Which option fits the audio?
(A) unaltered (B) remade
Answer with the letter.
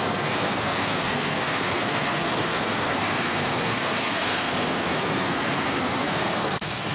B